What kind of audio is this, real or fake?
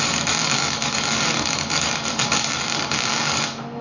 fake